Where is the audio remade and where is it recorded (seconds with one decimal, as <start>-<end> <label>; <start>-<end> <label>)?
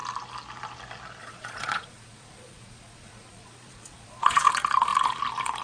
0.0-1.2 recorded; 1.2-4.5 remade; 4.5-5.6 recorded